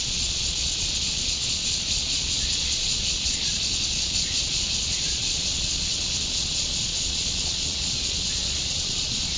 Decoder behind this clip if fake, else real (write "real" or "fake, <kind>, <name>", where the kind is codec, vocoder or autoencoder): fake, vocoder, Vocos